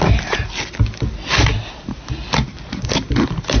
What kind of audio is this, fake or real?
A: real